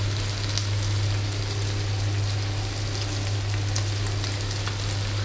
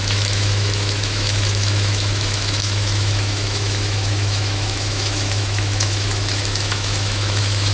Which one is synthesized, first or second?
second